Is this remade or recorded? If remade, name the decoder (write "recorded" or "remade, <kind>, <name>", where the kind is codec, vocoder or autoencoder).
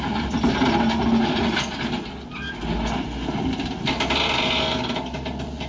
recorded